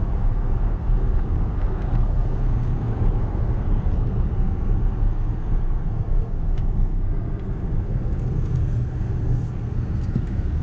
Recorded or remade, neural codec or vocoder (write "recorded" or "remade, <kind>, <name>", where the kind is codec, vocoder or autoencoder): remade, codec, SNAC